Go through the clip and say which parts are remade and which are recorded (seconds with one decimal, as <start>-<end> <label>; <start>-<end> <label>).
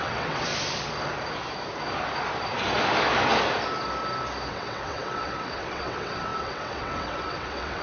0.0-0.5 remade; 0.5-4.5 recorded; 4.5-7.8 remade